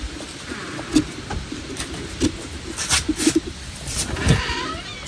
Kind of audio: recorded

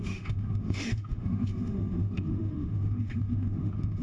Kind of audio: remade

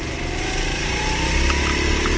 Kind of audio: recorded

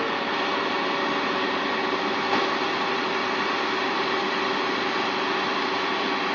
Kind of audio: recorded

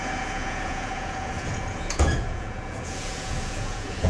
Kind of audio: remade